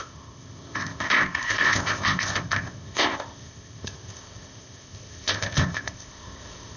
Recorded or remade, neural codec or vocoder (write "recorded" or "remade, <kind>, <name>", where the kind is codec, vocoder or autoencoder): remade, codec, ZipCodec